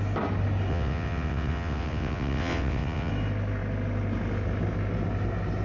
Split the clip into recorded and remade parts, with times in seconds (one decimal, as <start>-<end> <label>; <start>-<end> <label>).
0.0-0.7 recorded; 0.7-3.1 remade; 3.1-5.6 recorded